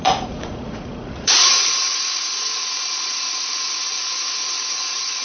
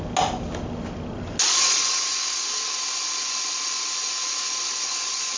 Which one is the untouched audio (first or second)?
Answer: second